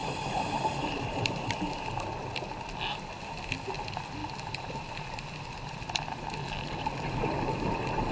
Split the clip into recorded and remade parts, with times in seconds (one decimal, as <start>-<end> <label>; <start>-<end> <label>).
0.0-1.4 remade; 1.4-4.2 recorded; 4.2-4.9 remade; 4.9-8.1 recorded